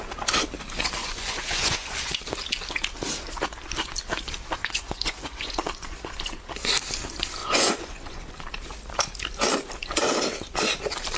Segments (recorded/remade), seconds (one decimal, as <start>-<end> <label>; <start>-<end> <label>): 0.0-1.0 recorded; 1.0-2.2 remade; 2.2-4.6 recorded; 4.6-6.7 remade; 6.7-7.4 recorded; 7.4-8.3 remade; 8.3-11.2 recorded